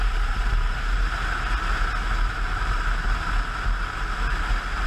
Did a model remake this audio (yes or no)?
no